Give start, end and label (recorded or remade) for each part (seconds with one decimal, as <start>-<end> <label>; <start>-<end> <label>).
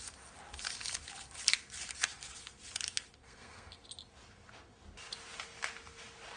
0.0-3.2 recorded; 3.2-3.8 remade; 3.8-6.4 recorded